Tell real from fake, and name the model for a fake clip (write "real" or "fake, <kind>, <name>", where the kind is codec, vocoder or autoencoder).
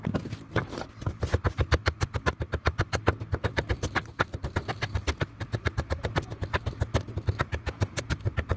real